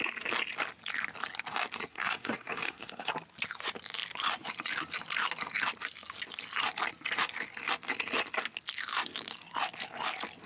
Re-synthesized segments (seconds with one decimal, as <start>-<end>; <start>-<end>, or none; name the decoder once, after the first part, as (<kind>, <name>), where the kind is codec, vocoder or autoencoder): 1.9-3.1 (codec, SNAC)